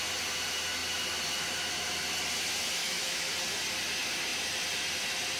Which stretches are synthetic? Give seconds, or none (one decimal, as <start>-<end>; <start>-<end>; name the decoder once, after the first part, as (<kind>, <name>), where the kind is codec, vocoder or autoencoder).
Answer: 2.8-3.3 (autoencoder, DAC-VAE)

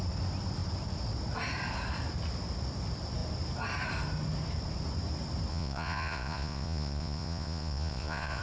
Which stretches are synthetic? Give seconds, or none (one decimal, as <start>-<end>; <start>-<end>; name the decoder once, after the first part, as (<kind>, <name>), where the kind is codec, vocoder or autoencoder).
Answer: 5.5-8.4 (vocoder, Vocos)

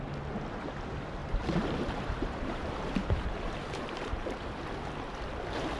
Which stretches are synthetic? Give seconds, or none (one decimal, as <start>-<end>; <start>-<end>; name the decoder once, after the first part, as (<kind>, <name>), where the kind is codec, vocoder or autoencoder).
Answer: 1.2-4.7 (vocoder, BigVGAN v2)

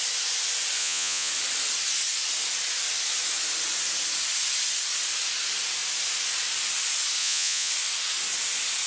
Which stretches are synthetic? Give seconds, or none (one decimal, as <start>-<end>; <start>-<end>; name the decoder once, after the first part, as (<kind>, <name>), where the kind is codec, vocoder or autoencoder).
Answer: 0.8-1.3 (vocoder, Vocos); 7.2-7.7

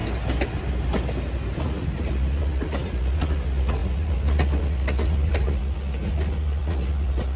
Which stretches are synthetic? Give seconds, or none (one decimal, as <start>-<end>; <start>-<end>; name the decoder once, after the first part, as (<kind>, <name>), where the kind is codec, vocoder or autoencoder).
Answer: 1.6-7.4 (vocoder, Vocos)

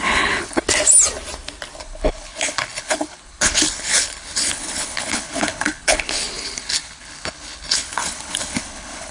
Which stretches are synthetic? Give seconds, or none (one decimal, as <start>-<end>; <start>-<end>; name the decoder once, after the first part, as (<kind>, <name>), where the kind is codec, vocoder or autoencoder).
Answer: 0.0-0.6 (codec, HILCodec); 1.8-9.1